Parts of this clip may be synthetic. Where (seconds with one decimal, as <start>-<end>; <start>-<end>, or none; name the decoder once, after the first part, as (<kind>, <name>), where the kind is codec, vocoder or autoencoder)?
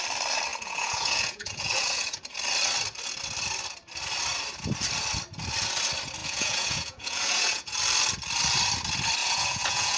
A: 0.5-2.2 (vocoder, Vocos); 6.2-7.7; 9.2-10.0